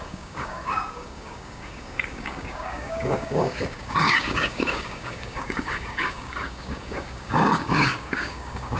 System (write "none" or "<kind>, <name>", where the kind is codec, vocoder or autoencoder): codec, DAC